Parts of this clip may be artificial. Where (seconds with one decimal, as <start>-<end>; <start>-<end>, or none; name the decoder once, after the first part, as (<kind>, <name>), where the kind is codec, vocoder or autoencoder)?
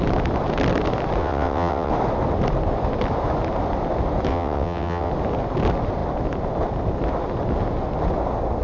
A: 1.2-1.9 (vocoder, WaveNeXt); 4.3-5.1